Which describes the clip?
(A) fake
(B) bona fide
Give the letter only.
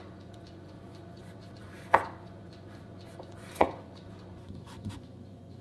A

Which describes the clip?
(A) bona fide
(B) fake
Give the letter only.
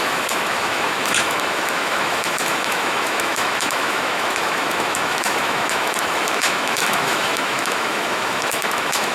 B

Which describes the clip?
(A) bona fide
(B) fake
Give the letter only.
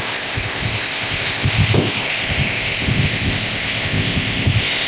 B